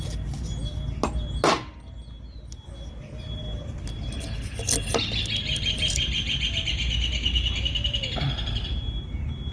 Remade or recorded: recorded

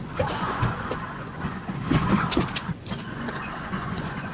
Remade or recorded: remade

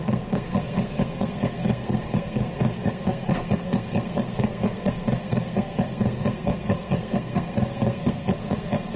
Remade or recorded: remade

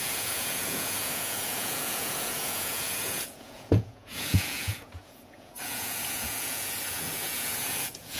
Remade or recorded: remade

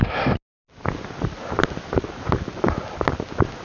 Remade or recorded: recorded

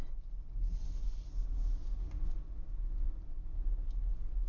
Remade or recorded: recorded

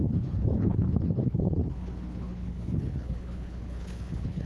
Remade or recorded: remade